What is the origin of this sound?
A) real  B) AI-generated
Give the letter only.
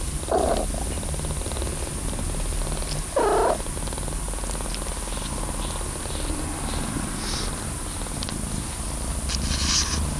A